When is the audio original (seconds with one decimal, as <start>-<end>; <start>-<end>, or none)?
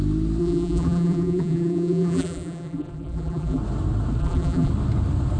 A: 0.0-0.4; 3.6-4.2; 4.7-5.4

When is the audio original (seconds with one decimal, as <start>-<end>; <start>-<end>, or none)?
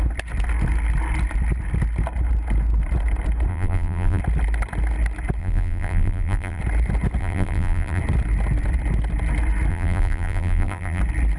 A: 0.0-3.5; 4.2-5.4; 6.6-7.2; 8.0-9.7; 11.0-11.4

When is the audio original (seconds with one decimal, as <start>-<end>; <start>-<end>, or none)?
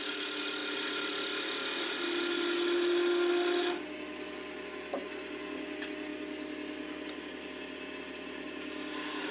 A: 0.0-9.3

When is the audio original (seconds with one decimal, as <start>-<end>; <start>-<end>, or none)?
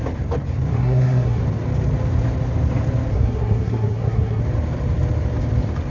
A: 0.0-0.7; 1.4-3.1; 4.4-5.9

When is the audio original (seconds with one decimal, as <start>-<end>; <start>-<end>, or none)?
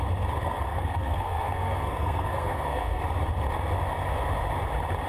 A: 0.0-0.4; 3.0-5.1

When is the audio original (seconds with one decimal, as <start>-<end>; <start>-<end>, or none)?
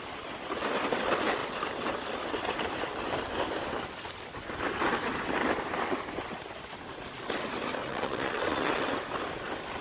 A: 0.0-7.8; 8.8-9.8